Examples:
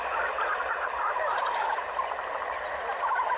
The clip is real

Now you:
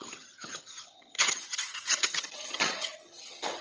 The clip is fake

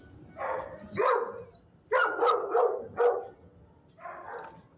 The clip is real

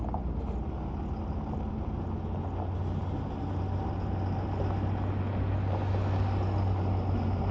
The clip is real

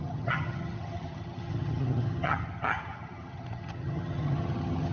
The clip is fake